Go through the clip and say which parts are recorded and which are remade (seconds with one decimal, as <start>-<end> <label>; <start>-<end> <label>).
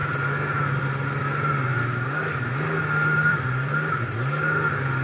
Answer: 0.0-3.3 recorded; 3.3-4.0 remade; 4.0-5.0 recorded